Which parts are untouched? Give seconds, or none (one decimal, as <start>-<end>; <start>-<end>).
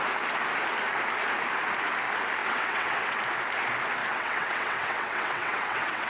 0.0-2.4; 3.2-4.0